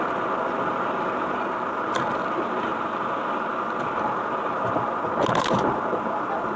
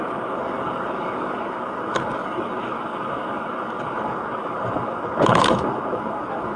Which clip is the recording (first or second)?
first